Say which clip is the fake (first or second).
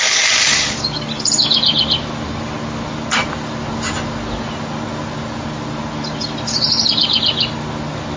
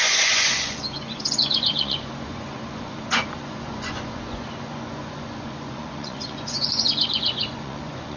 second